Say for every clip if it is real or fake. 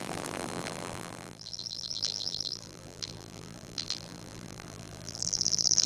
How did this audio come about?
fake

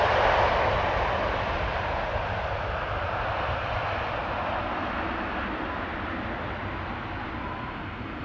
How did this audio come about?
real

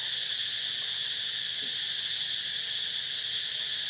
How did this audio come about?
real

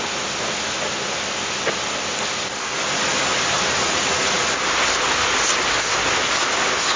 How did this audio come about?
real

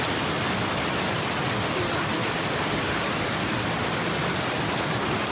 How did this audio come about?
real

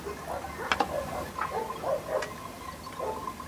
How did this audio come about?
real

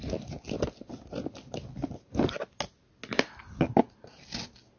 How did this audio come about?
real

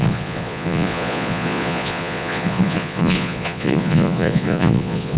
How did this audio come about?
fake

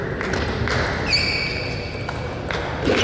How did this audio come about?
real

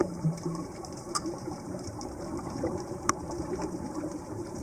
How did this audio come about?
fake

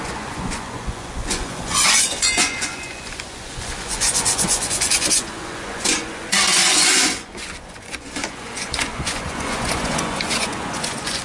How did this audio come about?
fake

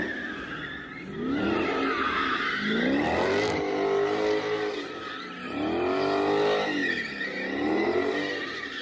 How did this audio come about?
real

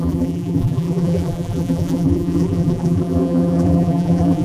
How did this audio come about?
fake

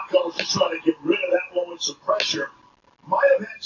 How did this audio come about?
real